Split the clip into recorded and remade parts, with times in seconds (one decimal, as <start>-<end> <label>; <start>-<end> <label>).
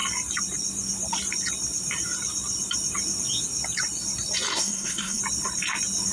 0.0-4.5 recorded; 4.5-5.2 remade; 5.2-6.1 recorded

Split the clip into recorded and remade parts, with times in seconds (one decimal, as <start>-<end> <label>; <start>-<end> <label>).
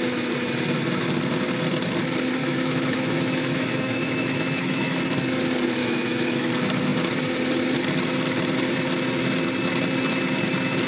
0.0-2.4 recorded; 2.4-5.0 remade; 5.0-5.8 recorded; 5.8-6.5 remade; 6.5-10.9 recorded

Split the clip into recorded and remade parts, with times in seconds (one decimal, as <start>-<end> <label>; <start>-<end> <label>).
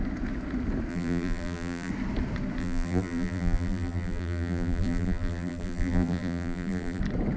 0.0-0.9 recorded; 0.9-1.9 remade; 1.9-2.6 recorded; 2.6-7.0 remade; 7.0-7.4 recorded